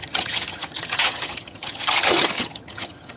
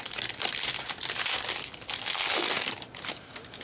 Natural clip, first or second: second